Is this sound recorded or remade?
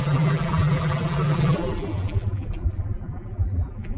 remade